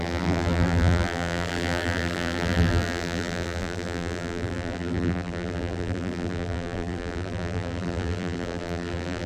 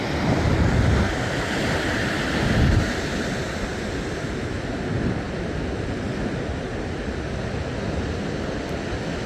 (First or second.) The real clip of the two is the second